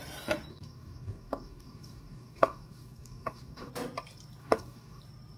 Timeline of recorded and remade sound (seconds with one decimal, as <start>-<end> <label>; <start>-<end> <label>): 0.0-0.5 recorded; 0.5-3.7 remade; 3.7-4.4 recorded; 4.4-5.0 remade; 5.0-5.4 recorded